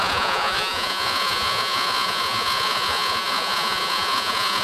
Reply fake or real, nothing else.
fake